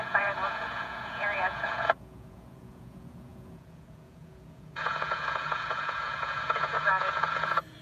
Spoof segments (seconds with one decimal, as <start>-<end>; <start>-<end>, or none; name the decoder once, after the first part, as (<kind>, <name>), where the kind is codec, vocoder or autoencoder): 0.0-7.8 (vocoder, Vocos)